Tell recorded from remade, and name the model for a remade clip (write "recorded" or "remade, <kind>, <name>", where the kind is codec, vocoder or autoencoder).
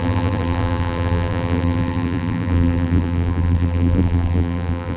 remade, vocoder, BigVGAN v2